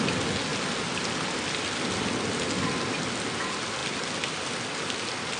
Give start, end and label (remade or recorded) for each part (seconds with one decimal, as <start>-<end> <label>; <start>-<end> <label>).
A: 0.0-5.4 recorded